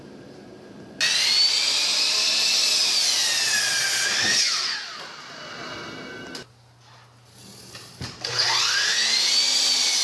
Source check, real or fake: real